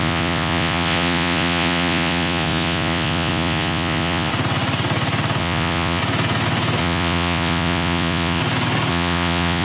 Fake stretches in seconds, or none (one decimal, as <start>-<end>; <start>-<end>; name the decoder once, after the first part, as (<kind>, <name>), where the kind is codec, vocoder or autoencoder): 0.0-4.3 (vocoder, Vocos); 5.4-6.0; 6.8-8.4; 8.9-9.6